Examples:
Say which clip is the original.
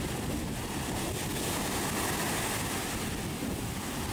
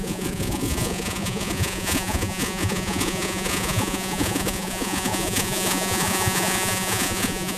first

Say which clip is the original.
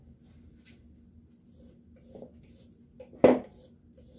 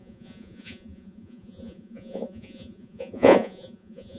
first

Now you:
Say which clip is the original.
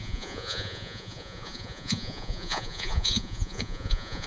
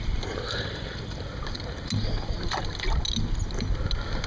second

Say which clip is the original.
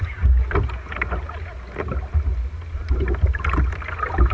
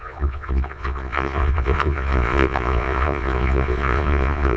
first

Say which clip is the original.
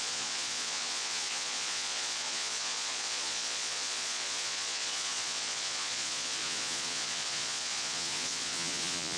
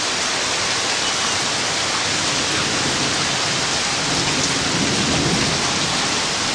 second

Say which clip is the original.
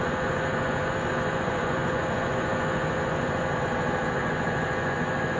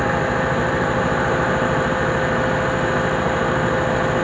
second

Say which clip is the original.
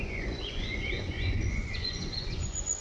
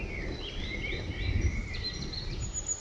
second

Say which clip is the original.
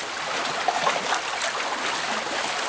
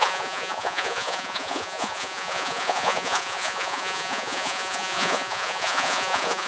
first